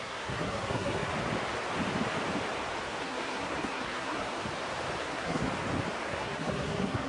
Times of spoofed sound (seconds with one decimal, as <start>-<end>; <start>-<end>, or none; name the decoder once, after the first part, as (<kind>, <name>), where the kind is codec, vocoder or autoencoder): 0.0-1.1 (codec, SNAC); 3.0-4.4; 5.0-5.4; 6.1-7.1